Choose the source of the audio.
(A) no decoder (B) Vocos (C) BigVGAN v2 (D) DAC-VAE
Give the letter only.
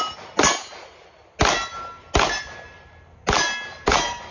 A